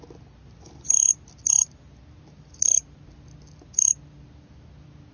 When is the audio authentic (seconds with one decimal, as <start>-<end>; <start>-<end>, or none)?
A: 0.0-5.1